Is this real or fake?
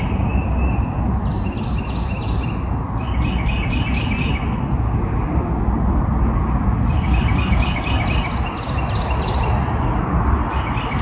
real